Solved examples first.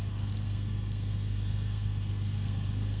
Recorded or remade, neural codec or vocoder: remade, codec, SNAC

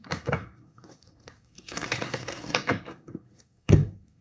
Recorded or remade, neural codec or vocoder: remade, codec, SNAC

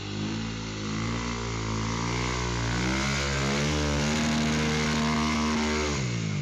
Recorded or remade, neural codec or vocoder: recorded